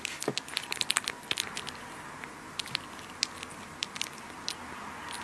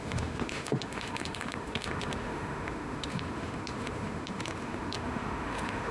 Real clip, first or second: first